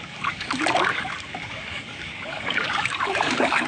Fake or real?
fake